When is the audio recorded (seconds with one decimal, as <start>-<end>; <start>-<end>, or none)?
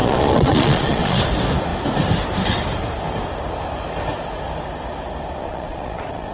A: 1.2-5.4